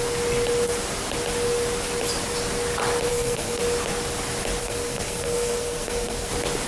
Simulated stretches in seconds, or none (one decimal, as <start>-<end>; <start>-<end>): 3.1-3.6; 4.6-6.3